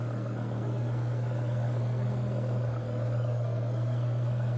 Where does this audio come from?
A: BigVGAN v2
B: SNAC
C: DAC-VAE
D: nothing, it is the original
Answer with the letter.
B